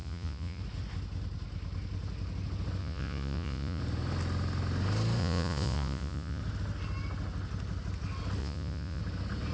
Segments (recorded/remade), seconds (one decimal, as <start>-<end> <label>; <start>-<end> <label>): 0.0-0.6 remade; 0.6-2.8 recorded; 2.8-3.8 remade; 3.8-5.2 recorded; 5.2-6.4 remade; 6.4-8.4 recorded; 8.4-9.0 remade; 9.0-9.5 recorded